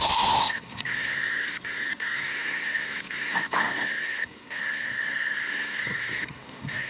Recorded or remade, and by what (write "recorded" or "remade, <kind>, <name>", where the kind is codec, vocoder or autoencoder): remade, codec, SNAC